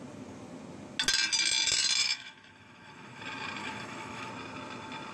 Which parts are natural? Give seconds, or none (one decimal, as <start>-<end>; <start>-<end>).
0.0-2.0; 3.2-3.6; 4.3-5.1